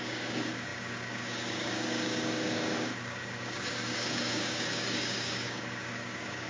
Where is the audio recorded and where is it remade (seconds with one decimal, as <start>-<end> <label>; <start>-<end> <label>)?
0.0-6.5 remade